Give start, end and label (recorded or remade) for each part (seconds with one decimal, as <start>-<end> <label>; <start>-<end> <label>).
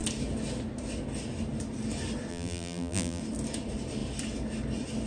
0.0-2.3 recorded; 2.3-3.2 remade; 3.2-5.1 recorded